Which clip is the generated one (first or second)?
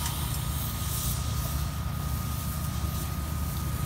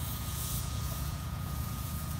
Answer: second